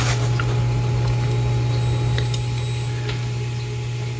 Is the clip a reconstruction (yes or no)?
no